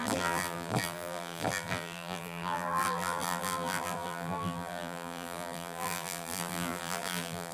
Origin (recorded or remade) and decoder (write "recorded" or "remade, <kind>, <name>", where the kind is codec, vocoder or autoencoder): remade, vocoder, BigVGAN v2